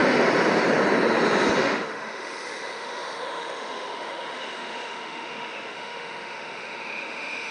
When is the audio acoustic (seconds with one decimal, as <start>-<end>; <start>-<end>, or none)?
0.0-1.6